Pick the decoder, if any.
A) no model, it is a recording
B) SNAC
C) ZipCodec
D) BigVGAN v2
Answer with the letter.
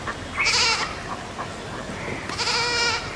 A